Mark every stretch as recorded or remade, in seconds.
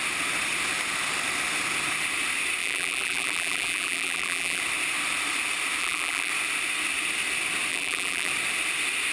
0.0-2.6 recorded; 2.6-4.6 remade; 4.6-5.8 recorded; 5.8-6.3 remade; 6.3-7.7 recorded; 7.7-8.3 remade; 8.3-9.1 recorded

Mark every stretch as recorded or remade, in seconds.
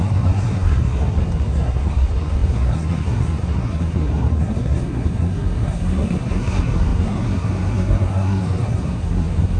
0.0-9.6 remade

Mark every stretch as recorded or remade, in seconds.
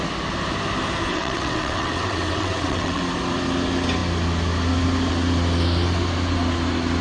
0.0-1.1 recorded; 1.1-3.0 remade; 3.0-7.0 recorded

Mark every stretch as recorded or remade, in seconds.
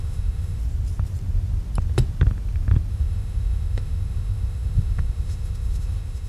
0.0-0.6 remade; 0.6-2.9 recorded; 2.9-6.3 remade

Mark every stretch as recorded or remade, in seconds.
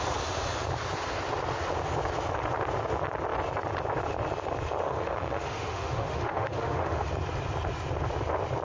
0.0-4.8 recorded; 4.8-7.1 remade; 7.1-8.6 recorded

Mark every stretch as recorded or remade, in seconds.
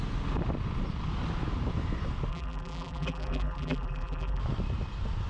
0.0-2.3 recorded; 2.3-4.4 remade; 4.4-5.3 recorded